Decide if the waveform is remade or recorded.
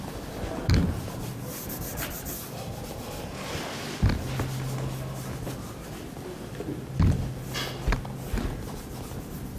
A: recorded